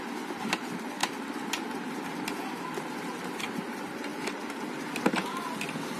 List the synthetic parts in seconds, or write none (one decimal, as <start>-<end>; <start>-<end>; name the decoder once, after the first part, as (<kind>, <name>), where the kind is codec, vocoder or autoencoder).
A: 4.1-4.6 (vocoder, BigVGAN v2)